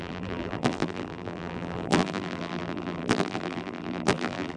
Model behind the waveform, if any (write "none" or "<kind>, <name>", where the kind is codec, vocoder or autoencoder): vocoder, BigVGAN v2